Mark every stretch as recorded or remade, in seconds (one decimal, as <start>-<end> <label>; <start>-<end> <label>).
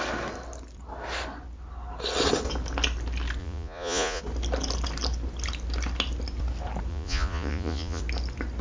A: 0.0-3.4 recorded; 3.4-4.2 remade; 4.2-6.9 recorded; 6.9-8.0 remade; 8.0-8.6 recorded